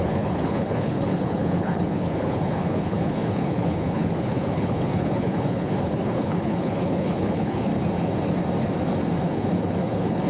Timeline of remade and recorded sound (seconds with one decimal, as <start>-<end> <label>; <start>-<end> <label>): 0.0-7.7 remade; 7.7-9.2 recorded; 9.2-10.3 remade